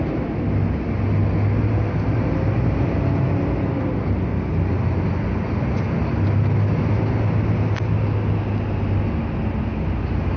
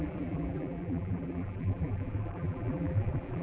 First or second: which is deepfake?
second